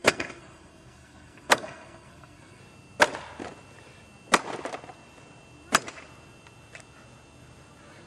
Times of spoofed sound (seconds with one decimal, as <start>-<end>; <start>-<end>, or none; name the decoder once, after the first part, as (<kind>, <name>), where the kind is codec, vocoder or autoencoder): 0.0-2.6 (codec, SNAC)